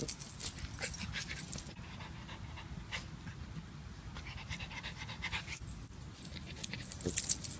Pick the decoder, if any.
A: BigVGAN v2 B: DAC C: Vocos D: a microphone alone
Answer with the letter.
D